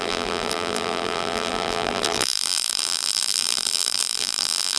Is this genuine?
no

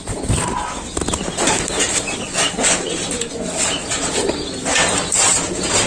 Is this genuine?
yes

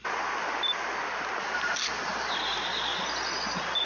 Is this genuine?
yes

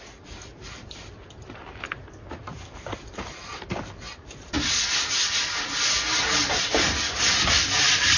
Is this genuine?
yes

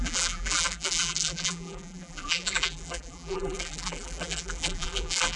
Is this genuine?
no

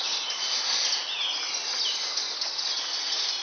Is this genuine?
yes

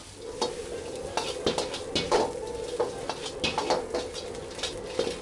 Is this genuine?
yes